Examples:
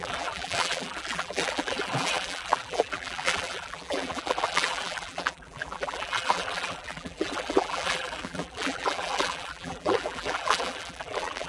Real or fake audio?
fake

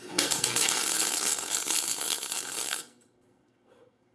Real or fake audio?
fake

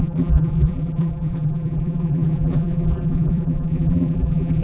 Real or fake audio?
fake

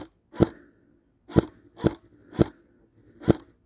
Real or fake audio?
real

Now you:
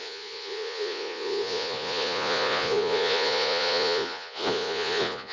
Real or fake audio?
fake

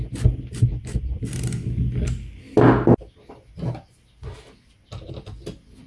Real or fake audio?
real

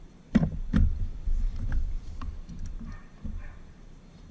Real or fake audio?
fake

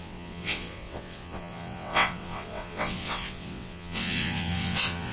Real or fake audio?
fake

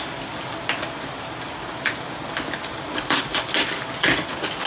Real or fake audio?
real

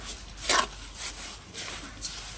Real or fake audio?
real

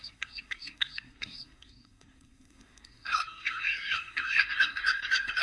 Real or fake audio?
fake